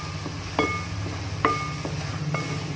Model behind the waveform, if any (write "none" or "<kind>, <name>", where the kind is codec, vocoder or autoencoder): none